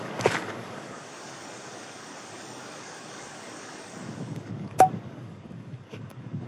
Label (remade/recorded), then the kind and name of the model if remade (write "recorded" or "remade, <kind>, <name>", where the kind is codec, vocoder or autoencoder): remade, codec, DAC